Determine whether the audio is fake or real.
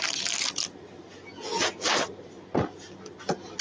real